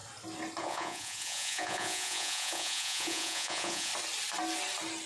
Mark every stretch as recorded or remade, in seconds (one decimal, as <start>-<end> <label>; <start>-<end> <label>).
0.0-0.6 recorded; 0.6-3.9 remade; 3.9-5.1 recorded